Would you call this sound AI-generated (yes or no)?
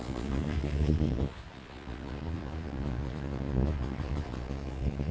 yes